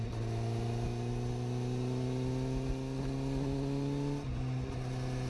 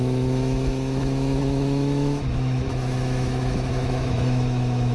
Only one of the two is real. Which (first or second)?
first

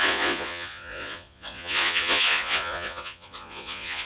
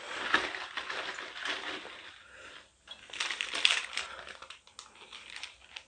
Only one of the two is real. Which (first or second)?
second